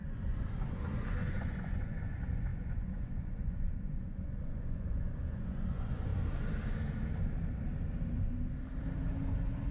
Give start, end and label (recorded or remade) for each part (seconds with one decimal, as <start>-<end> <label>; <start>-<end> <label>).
0.0-6.1 remade; 6.1-9.7 recorded

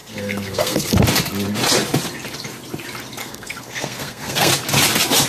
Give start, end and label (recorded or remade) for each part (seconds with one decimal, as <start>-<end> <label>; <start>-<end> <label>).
0.0-0.9 remade; 0.9-3.2 recorded; 3.2-4.5 remade; 4.5-5.3 recorded

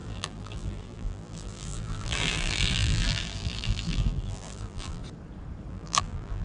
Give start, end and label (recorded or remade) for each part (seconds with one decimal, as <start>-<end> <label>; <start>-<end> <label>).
0.0-5.0 remade; 5.0-5.7 recorded; 5.7-6.4 remade

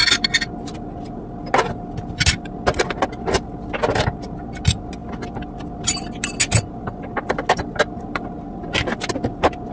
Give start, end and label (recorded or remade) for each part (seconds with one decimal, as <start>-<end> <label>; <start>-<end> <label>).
0.0-9.7 recorded

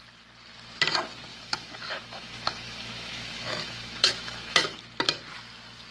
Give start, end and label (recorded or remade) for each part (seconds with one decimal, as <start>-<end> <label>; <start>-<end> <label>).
0.0-1.3 recorded; 1.3-4.8 remade; 4.8-5.9 recorded

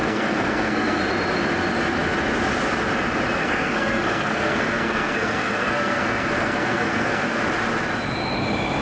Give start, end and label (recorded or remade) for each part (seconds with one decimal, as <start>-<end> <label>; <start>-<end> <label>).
0.0-1.0 remade; 1.0-3.4 recorded; 3.4-7.4 remade; 7.4-8.8 recorded

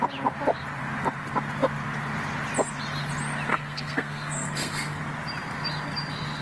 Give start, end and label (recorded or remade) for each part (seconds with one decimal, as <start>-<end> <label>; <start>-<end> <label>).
0.0-3.5 recorded; 3.5-5.0 remade; 5.0-6.4 recorded

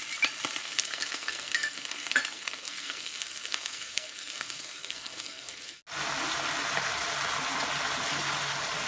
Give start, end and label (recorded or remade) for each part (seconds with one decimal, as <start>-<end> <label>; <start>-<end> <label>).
0.0-0.6 recorded; 0.6-5.8 remade; 5.8-8.9 recorded